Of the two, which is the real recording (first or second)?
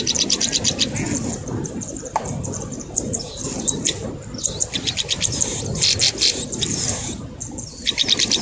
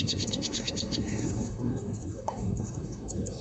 first